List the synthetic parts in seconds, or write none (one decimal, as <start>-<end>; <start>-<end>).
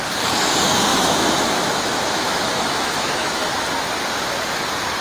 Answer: 0.9-3.5